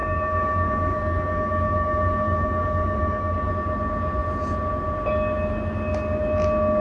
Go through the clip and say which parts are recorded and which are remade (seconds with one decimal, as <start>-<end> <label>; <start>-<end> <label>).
0.0-3.5 remade; 3.5-6.8 recorded

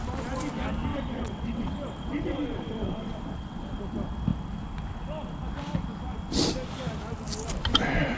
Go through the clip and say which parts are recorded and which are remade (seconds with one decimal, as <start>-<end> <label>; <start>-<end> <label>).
0.0-0.9 recorded; 0.9-3.8 remade; 3.8-8.2 recorded